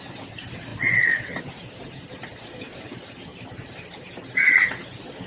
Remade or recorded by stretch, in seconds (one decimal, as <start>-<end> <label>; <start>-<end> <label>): 0.0-5.3 recorded